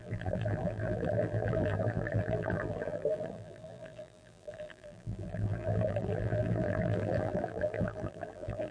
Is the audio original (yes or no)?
no